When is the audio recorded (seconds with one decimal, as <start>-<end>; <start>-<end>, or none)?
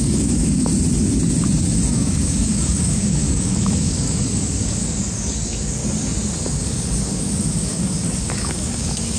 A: 0.7-1.9; 5.8-6.4